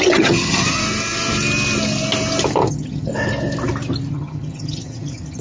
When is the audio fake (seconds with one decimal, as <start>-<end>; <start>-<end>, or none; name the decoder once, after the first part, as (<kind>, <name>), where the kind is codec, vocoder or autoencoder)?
0.0-0.8 (vocoder, HiFi-GAN); 2.7-3.1; 4.1-5.4

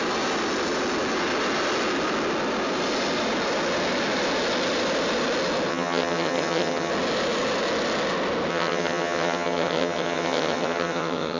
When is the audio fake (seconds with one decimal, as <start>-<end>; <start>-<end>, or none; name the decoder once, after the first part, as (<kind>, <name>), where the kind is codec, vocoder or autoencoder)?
5.7-6.9 (vocoder, HiFi-GAN); 8.5-11.4

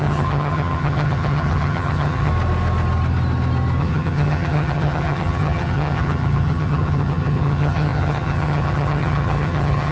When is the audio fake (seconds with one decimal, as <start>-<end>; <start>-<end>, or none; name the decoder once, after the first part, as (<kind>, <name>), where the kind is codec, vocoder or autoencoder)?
0.0-2.3 (vocoder, HiFi-GAN); 3.8-9.9

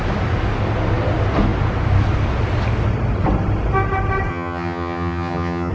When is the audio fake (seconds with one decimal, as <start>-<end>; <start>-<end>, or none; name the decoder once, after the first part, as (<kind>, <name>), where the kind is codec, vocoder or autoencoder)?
4.3-5.7 (vocoder, HiFi-GAN)